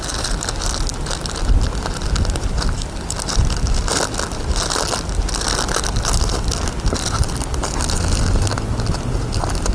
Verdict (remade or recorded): recorded